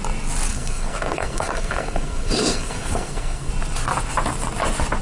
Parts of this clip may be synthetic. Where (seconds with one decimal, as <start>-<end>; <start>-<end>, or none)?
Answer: 0.5-3.5

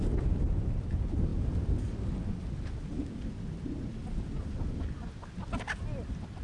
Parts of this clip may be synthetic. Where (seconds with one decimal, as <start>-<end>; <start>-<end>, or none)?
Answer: none

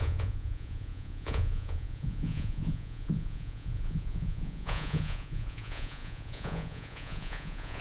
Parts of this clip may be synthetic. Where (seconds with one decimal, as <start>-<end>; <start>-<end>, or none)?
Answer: 0.0-7.8

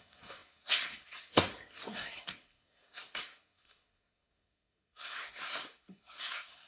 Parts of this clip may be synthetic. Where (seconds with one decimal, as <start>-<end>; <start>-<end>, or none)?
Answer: 0.0-6.7

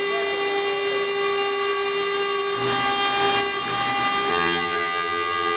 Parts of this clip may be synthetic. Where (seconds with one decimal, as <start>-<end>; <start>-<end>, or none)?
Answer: 4.3-5.6

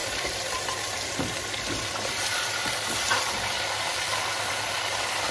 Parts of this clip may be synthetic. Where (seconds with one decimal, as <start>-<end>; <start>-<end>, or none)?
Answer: 0.0-2.7; 3.9-5.3

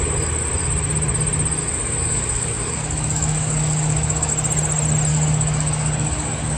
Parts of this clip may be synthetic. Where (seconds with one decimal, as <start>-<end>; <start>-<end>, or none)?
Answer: 1.6-4.3; 5.1-6.6